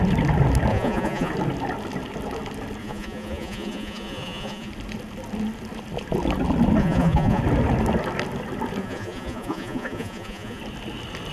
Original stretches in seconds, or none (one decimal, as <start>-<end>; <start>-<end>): 0.0-0.7; 1.3-2.8; 4.7-6.8; 7.4-8.8; 10.6-11.3